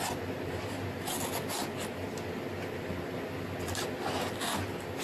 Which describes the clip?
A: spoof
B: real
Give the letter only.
B